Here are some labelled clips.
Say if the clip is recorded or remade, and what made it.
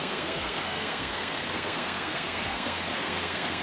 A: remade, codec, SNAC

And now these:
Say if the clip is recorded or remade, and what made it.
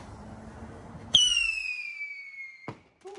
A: recorded